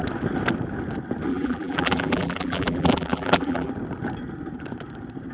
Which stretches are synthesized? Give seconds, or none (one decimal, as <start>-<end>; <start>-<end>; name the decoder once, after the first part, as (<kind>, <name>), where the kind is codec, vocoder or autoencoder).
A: 1.3-3.7 (vocoder, BigVGAN v2)

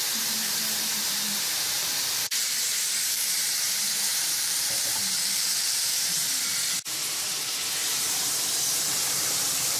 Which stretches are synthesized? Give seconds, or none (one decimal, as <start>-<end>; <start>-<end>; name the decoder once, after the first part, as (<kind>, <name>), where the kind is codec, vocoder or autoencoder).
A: 0.0-6.2 (vocoder, BigVGAN v2); 7.1-7.8; 8.7-9.8

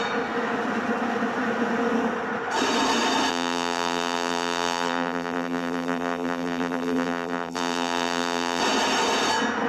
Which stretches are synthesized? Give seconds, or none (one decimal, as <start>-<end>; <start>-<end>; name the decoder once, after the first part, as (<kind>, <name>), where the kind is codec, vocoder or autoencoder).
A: 3.3-8.6 (vocoder, BigVGAN v2)

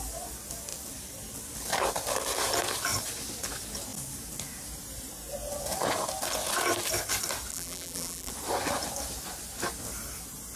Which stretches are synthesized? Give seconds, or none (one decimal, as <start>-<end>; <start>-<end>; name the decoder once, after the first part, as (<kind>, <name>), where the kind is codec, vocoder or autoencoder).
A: 7.5-8.3 (vocoder, BigVGAN v2)

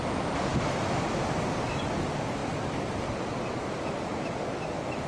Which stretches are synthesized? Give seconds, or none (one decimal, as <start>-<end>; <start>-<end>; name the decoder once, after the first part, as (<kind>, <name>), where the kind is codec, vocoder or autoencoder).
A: none

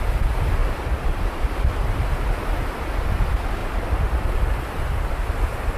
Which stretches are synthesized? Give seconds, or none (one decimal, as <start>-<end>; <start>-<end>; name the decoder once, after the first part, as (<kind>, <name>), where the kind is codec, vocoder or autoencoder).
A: 0.6-1.4 (vocoder, BigVGAN v2); 3.6-5.1

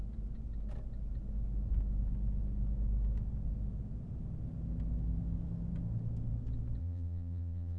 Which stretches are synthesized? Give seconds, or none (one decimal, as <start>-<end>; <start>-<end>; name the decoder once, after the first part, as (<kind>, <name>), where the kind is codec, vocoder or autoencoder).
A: 6.8-7.8 (vocoder, BigVGAN v2)